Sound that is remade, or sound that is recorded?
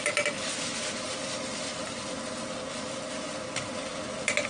recorded